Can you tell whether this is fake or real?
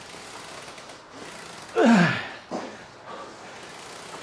real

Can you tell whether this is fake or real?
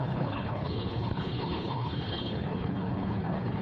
fake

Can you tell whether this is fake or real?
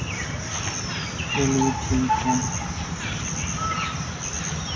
real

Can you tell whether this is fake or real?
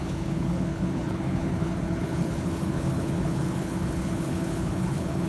fake